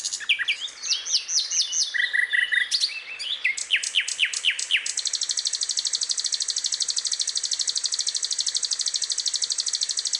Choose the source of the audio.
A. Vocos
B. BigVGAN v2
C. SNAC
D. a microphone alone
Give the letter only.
D